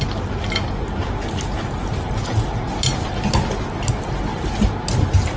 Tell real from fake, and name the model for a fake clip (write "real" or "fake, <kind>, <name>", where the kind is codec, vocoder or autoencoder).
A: real